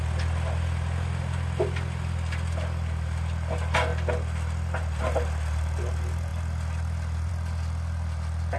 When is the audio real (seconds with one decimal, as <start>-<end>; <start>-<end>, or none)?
0.0-8.6